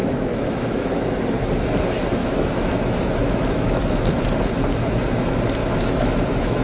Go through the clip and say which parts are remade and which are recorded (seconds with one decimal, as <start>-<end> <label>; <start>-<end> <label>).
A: 0.0-1.0 remade; 1.0-2.2 recorded; 2.2-4.0 remade; 4.0-5.6 recorded; 5.6-6.6 remade